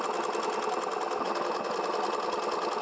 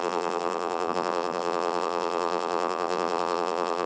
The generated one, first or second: second